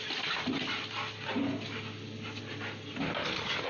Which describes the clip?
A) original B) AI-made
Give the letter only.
A